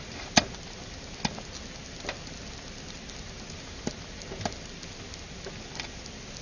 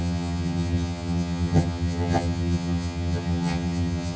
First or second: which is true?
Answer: first